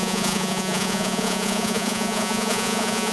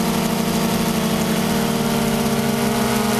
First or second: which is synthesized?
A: first